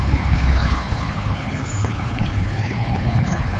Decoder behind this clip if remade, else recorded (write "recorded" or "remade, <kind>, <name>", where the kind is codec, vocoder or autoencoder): remade, codec, HILCodec